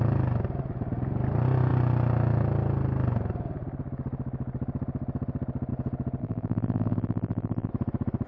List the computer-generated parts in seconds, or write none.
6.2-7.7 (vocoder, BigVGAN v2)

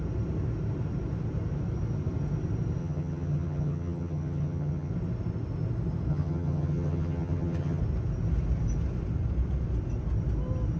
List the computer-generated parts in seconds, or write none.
2.8-4.9 (vocoder, HiFi-GAN); 6.1-7.8

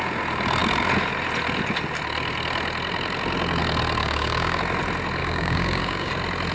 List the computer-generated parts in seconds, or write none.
4.0-4.6 (codec, DAC); 5.2-6.1

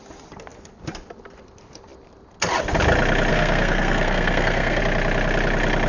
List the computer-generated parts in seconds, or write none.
3.3-4.8 (codec, SNAC)

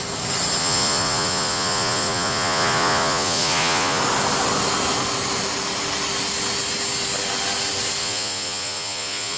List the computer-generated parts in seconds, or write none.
0.6-4.0 (vocoder, Vocos); 8.0-9.4